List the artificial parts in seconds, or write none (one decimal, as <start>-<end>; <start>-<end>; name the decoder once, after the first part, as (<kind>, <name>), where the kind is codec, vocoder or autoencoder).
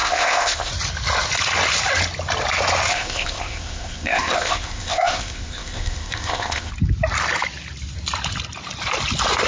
0.0-0.7 (codec, ZipCodec); 2.9-6.7